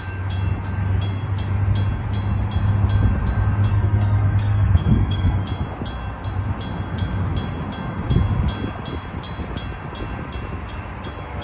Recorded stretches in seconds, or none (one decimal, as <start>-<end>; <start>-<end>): 0.0-3.7; 5.4-11.4